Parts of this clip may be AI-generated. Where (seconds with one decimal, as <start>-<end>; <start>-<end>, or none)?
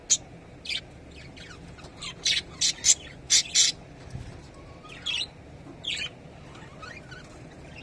none